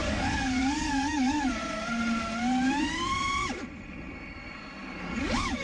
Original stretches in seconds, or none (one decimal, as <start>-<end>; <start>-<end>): 1.6-5.0

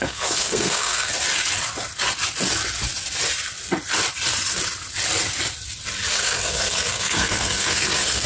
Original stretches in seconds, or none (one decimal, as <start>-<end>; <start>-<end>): 1.1-6.1